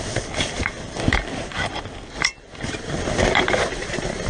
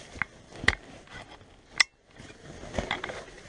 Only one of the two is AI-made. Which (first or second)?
first